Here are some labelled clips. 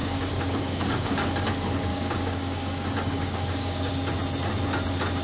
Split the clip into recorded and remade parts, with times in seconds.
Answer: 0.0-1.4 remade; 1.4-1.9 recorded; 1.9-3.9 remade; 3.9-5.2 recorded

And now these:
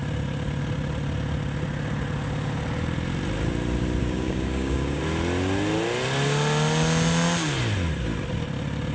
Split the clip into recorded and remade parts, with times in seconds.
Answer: 0.0-4.0 recorded; 4.0-5.0 remade; 5.0-8.9 recorded

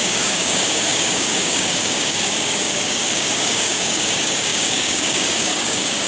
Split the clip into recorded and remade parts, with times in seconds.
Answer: 0.0-6.1 remade

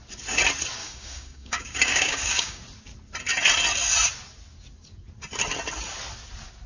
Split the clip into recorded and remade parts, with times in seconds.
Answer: 0.0-0.8 recorded; 0.8-2.6 remade; 2.6-6.7 recorded

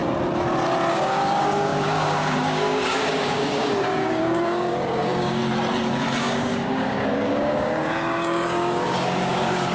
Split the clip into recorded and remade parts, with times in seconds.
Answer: 0.0-0.9 recorded; 0.9-5.4 remade; 5.4-6.2 recorded; 6.2-9.7 remade

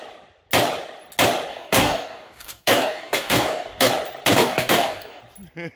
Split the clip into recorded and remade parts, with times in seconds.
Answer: 0.0-1.5 recorded; 1.5-3.9 remade; 3.9-4.3 recorded; 4.3-5.2 remade; 5.2-5.8 recorded